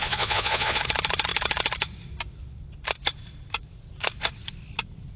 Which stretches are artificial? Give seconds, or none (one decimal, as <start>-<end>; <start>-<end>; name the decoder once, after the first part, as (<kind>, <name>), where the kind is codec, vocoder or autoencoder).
0.0-0.8 (vocoder, Vocos)